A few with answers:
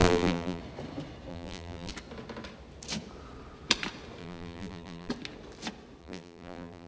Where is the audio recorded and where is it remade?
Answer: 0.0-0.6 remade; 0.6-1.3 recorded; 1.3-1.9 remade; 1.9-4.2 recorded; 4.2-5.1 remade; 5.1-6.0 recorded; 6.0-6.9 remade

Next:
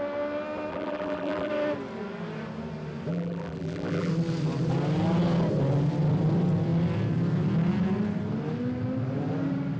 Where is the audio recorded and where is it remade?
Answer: 0.0-0.7 recorded; 0.7-1.5 remade; 1.5-3.1 recorded; 3.1-4.1 remade; 4.1-9.8 recorded

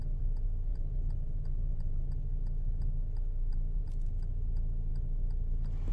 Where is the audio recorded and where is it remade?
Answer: 0.0-0.7 recorded; 0.7-2.1 remade; 2.1-3.5 recorded; 3.5-4.3 remade; 4.3-5.9 recorded

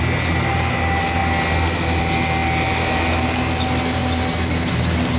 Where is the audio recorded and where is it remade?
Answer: 0.0-5.2 recorded

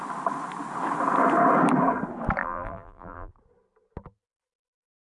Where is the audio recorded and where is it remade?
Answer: 0.0-2.4 recorded; 2.4-3.3 remade; 3.3-5.0 recorded

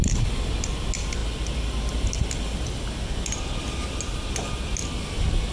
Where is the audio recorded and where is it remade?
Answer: 0.0-5.5 recorded